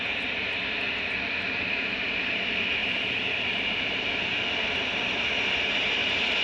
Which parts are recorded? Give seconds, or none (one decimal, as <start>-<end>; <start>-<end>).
0.0-2.8; 3.8-6.4